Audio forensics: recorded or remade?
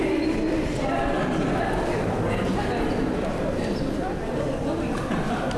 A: recorded